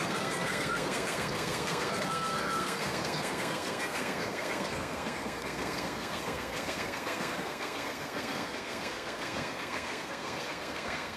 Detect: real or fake fake